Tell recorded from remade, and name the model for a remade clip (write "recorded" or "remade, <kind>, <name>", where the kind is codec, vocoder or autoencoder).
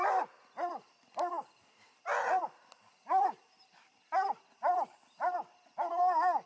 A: recorded